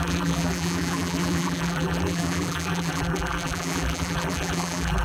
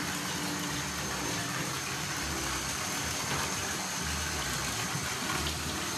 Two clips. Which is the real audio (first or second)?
second